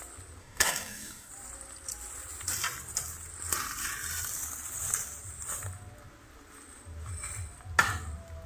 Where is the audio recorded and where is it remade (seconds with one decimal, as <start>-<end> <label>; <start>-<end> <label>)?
0.0-0.4 recorded; 0.4-1.3 remade; 1.3-8.5 recorded